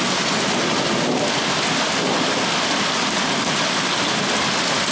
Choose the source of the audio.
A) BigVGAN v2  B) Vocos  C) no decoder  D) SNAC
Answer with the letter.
C